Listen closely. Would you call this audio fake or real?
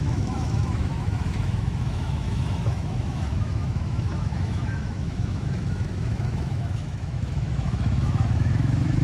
fake